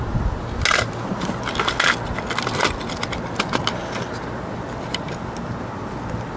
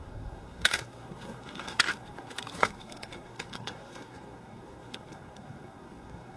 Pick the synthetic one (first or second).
second